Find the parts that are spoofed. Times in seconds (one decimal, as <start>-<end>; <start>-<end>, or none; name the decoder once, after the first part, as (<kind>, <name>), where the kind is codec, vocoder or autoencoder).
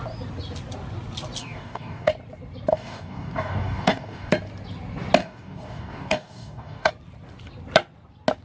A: 1.4-2.1 (codec, DAC); 2.7-4.3; 5.2-6.9